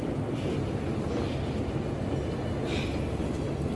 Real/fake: real